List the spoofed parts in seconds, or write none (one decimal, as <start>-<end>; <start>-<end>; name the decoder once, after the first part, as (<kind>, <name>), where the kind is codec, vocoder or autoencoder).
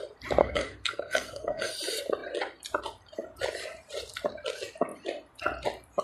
0.4-1.7 (codec, SNAC)